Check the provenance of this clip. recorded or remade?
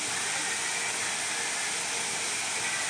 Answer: recorded